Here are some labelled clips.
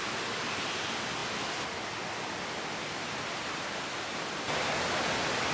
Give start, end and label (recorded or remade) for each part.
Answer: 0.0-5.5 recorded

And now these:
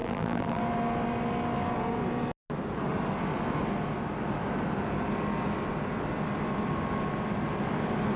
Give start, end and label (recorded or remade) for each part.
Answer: 0.0-0.6 remade; 0.6-8.2 recorded

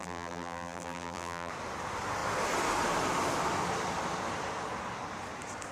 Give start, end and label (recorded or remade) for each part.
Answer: 0.0-1.5 remade; 1.5-5.7 recorded

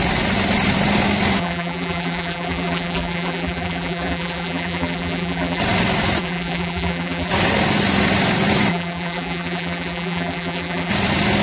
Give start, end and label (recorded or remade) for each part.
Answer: 0.0-1.4 recorded; 1.4-5.6 remade; 5.6-6.2 recorded; 6.2-7.3 remade; 7.3-8.7 recorded; 8.7-10.9 remade; 10.9-11.4 recorded

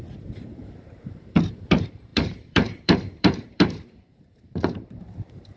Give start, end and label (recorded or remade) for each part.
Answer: 0.0-5.6 remade